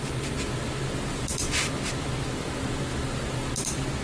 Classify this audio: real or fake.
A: real